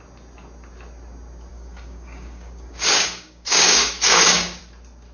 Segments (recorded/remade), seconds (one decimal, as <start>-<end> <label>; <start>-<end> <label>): 0.0-1.5 recorded; 1.5-4.6 remade; 4.6-5.1 recorded